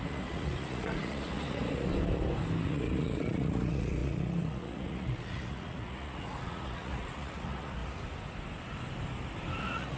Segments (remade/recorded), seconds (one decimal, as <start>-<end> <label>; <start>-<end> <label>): 0.0-1.9 remade; 1.9-2.6 recorded; 2.6-7.8 remade; 7.8-9.6 recorded; 9.6-10.0 remade